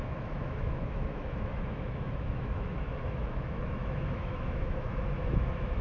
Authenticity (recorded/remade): remade